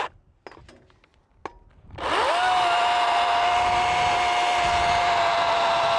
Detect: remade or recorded recorded